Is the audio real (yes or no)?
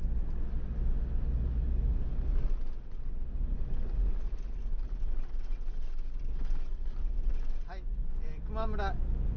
yes